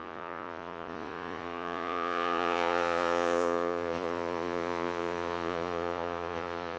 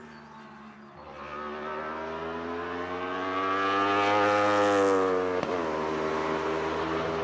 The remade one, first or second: first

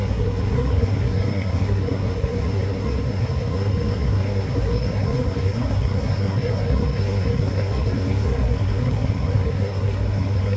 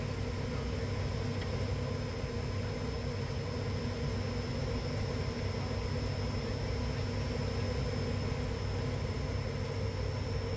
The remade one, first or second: first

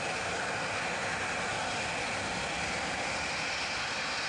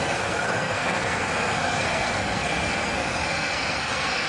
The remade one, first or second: second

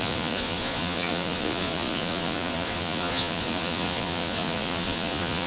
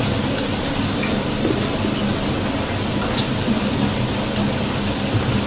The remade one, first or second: first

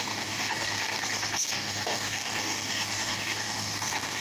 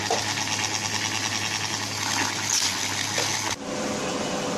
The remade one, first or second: first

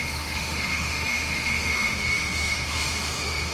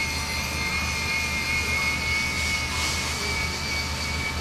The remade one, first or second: first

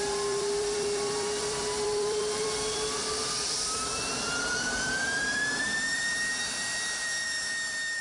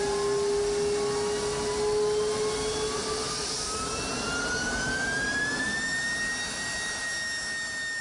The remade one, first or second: first